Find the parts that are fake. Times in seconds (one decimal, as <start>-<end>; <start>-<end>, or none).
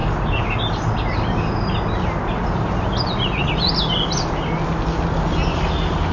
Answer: none